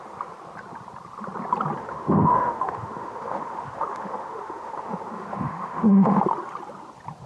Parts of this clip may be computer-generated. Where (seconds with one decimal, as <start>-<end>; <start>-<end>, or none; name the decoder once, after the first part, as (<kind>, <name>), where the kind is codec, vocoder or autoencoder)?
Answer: 1.8-6.2 (autoencoder, DAC-VAE)